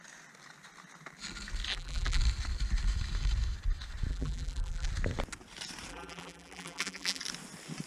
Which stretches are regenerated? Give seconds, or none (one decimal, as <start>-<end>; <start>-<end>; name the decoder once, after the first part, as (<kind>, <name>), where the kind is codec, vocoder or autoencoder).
1.7-2.2 (vocoder, BigVGAN v2); 4.1-4.9; 5.9-7.2